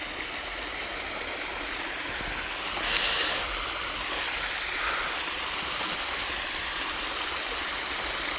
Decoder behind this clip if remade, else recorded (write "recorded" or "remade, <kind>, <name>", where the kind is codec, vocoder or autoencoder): recorded